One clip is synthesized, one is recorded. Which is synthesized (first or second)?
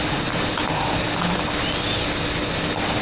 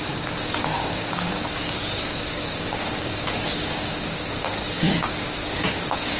second